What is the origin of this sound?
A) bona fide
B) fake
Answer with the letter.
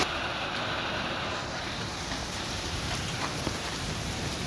B